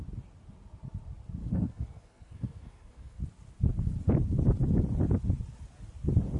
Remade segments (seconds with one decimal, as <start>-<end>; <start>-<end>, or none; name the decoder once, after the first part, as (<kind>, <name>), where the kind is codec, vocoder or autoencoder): 1.4-3.2 (codec, SNAC)